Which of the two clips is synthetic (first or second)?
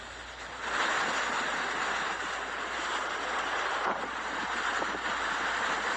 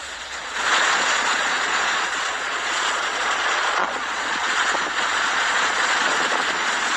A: second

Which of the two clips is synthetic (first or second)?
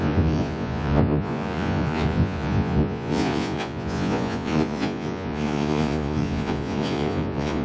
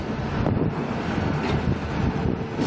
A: first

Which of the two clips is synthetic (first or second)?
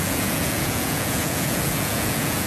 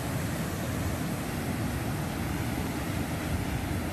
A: first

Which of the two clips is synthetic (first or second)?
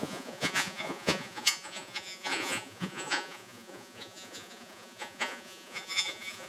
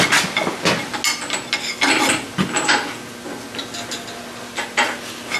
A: first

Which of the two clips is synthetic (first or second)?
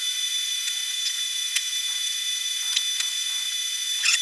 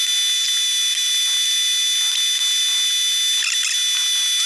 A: first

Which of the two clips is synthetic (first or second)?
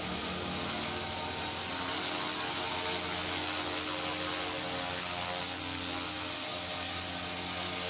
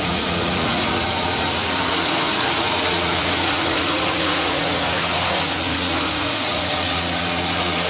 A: second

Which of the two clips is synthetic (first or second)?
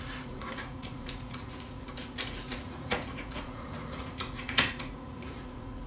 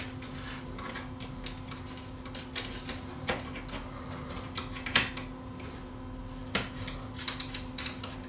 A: first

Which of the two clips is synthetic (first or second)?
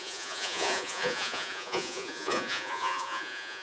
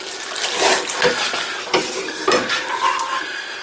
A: first